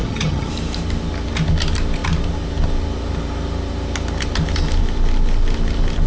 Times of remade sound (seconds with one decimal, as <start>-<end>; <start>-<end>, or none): 0.0-0.5